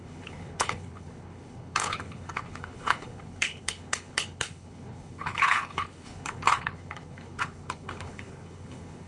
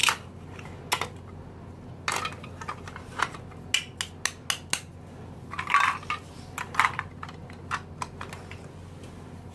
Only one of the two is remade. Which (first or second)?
first